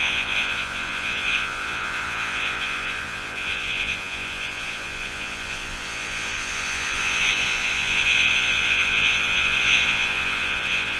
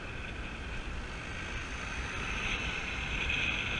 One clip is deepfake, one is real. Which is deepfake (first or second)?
first